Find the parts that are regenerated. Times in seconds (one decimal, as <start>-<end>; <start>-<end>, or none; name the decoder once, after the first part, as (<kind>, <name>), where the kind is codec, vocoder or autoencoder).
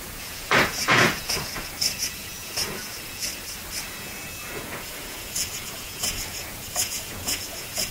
0.0-3.3 (vocoder, Vocos); 4.0-7.9